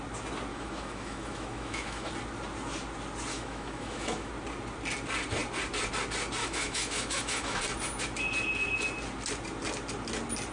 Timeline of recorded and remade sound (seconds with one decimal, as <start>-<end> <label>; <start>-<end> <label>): 0.0-0.5 recorded; 0.5-2.1 remade; 2.1-3.3 recorded; 3.3-4.3 remade; 4.3-6.4 recorded; 6.4-7.6 remade; 7.6-10.5 recorded